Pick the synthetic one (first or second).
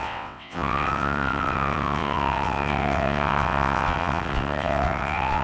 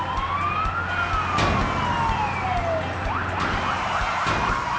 first